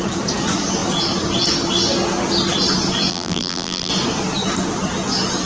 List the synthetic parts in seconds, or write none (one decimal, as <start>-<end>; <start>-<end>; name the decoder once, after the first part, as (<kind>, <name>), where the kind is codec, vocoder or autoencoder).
3.1-3.9 (vocoder, BigVGAN v2)